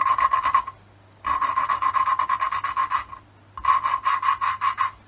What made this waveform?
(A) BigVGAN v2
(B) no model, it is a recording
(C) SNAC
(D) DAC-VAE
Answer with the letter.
B